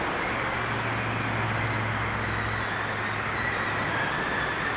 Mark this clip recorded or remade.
recorded